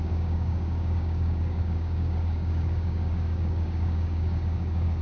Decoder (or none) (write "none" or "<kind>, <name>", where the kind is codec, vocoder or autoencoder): codec, DAC